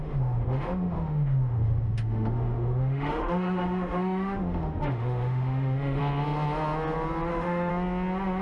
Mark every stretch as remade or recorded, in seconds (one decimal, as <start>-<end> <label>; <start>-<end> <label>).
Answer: 0.0-6.0 remade; 6.0-7.3 recorded; 7.3-7.7 remade; 7.7-8.4 recorded